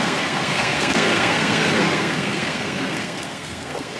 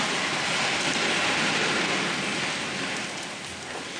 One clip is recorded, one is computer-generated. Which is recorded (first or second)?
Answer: second